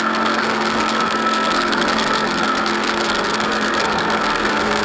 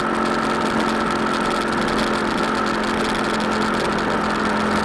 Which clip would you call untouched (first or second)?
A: second